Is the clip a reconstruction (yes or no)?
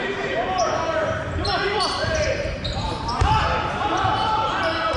yes